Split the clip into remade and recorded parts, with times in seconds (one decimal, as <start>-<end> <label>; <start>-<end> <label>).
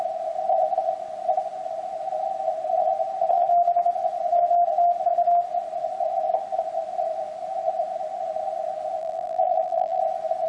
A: 0.0-9.0 recorded; 9.0-10.0 remade; 10.0-10.5 recorded